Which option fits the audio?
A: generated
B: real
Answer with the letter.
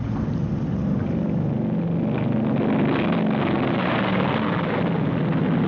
B